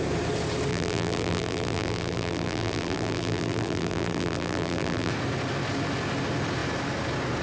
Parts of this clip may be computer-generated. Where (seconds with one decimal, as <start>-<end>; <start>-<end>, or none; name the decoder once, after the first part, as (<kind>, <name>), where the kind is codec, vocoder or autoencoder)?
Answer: 0.7-5.1 (vocoder, BigVGAN v2)